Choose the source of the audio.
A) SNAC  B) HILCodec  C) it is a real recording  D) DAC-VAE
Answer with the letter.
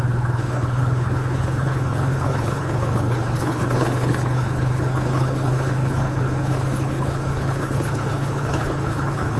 B